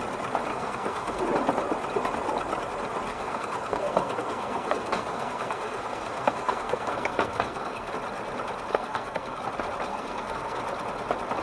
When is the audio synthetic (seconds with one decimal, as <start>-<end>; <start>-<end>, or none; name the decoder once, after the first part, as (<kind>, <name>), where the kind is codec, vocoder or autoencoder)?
0.5-1.2 (codec, SNAC); 3.1-7.9; 8.7-9.4; 9.9-10.6